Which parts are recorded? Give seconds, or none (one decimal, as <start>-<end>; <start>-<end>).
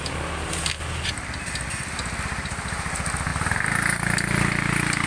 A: 0.0-5.1